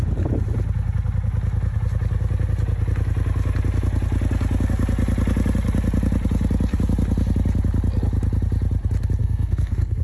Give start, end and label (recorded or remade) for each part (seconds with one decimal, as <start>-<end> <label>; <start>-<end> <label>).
0.0-9.2 recorded; 9.2-10.0 remade